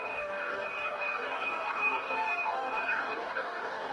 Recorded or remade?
remade